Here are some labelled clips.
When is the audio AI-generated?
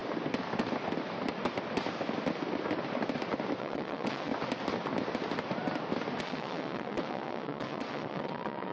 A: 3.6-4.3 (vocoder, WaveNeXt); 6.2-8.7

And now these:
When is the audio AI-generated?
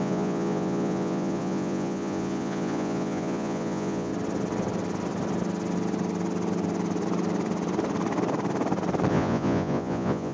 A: 0.0-4.1 (vocoder, Vocos); 9.1-10.3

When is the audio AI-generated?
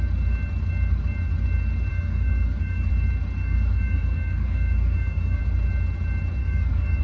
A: 1.9-2.9 (codec, DAC); 3.4-5.4; 6.4-7.0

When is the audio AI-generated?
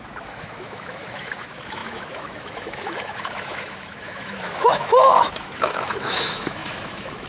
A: 0.0-7.3 (autoencoder, DAC-VAE)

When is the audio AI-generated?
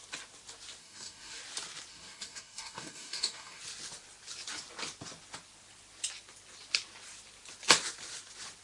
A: 0.8-1.4 (codec, DAC); 1.9-3.6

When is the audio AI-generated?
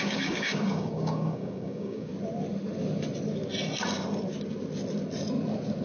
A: 0.0-2.1 (codec, DAC)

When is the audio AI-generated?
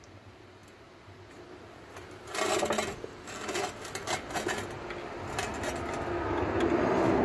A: none